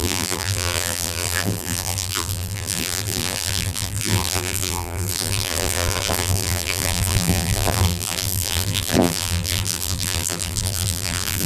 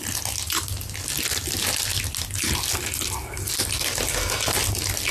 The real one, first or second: second